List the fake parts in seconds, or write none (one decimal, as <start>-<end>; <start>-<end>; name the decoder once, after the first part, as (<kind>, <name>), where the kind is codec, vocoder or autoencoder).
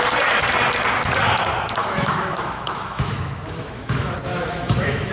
1.8-5.1 (autoencoder, DAC-VAE)